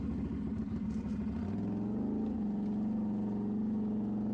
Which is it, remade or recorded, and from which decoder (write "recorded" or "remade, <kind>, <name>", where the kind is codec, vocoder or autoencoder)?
recorded